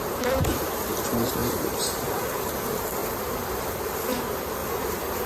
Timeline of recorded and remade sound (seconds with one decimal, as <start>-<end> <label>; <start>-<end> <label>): 0.0-1.4 recorded; 1.4-2.5 remade; 2.5-4.6 recorded; 4.6-5.3 remade